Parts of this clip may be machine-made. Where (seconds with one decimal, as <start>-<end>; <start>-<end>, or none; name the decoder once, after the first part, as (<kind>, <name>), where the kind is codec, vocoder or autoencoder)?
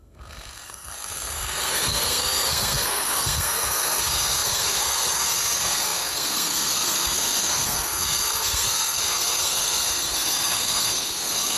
0.0-11.6 (codec, SNAC)